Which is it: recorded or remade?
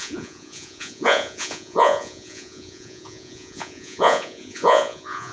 remade